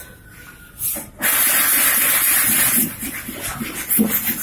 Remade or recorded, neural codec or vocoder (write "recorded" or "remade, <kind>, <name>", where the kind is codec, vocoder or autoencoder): recorded